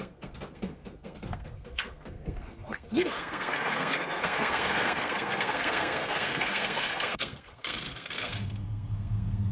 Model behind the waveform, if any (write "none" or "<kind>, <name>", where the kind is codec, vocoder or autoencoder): codec, SNAC